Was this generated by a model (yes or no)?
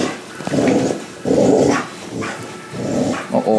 yes